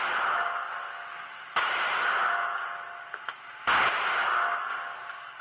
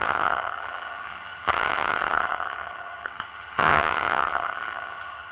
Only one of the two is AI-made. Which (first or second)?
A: second